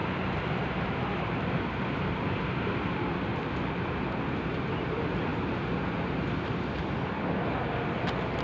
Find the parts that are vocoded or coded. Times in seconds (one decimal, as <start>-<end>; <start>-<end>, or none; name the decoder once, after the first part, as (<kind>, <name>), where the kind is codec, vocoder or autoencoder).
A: none